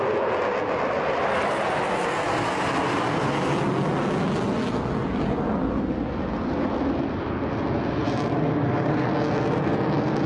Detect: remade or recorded recorded